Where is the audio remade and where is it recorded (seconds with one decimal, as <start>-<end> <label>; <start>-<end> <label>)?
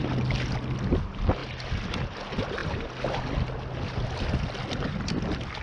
0.0-5.6 recorded